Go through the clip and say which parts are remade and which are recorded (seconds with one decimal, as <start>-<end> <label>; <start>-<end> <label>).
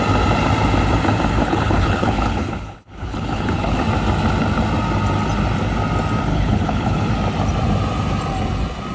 0.0-1.4 recorded; 1.4-3.8 remade; 3.8-6.3 recorded; 6.3-7.1 remade; 7.1-8.9 recorded